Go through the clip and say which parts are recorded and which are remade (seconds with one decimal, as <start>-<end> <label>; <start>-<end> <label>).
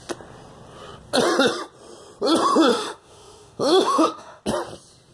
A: 0.0-2.7 recorded; 2.7-4.4 remade; 4.4-5.1 recorded